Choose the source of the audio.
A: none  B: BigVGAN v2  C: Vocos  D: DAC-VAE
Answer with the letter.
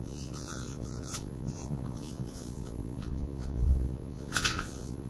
C